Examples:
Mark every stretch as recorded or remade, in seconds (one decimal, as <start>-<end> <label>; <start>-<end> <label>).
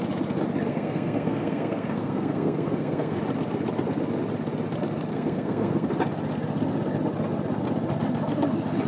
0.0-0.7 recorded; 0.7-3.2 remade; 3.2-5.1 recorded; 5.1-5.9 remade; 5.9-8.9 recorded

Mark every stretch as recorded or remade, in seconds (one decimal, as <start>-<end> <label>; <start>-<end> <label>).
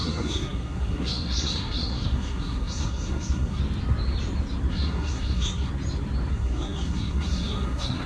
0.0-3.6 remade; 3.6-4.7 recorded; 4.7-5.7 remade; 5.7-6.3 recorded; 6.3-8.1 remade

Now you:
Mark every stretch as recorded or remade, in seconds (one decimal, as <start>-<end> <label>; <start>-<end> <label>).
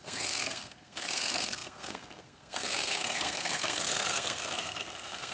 0.0-5.3 remade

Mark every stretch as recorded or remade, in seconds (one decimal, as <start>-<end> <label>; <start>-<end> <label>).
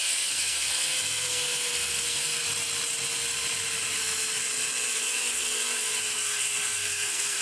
0.0-2.4 remade; 2.4-3.9 recorded; 3.9-4.4 remade; 4.4-4.9 recorded; 4.9-7.4 remade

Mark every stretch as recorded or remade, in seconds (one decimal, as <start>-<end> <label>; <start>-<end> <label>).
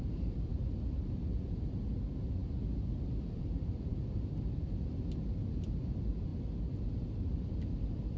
0.0-8.2 recorded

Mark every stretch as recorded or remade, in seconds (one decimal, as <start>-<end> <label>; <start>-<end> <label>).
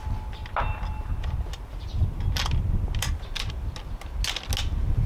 0.0-5.1 recorded